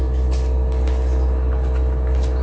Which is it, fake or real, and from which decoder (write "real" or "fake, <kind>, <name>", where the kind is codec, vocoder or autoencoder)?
real